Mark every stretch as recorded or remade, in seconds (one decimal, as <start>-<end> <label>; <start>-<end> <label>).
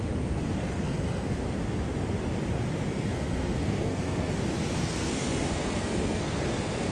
0.0-0.6 recorded; 0.6-1.4 remade; 1.4-2.9 recorded; 2.9-4.3 remade; 4.3-4.8 recorded; 4.8-6.9 remade